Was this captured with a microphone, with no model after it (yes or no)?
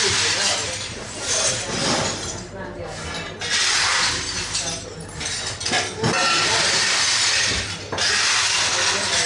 yes